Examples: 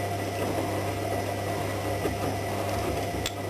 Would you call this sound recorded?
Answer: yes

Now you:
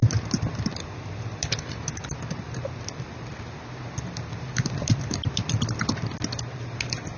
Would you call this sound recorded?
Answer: no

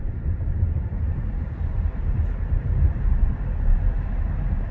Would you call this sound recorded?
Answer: no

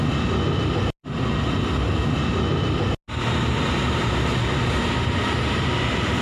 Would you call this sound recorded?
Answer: yes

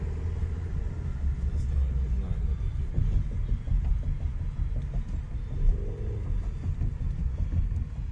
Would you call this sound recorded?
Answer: yes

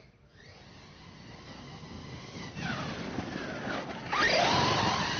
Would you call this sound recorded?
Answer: no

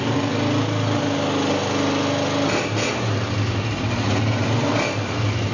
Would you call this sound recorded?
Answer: yes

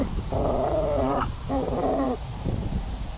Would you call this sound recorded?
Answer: no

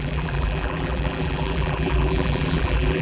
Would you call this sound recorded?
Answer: no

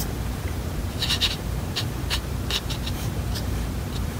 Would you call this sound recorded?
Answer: no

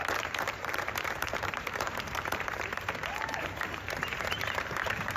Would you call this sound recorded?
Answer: no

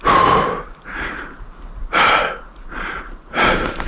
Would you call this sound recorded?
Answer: no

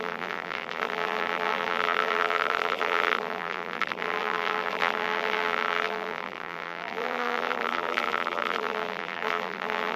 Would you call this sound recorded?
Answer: no